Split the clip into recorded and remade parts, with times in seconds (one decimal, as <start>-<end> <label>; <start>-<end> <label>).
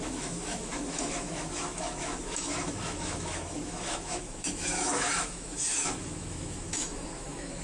0.0-7.6 remade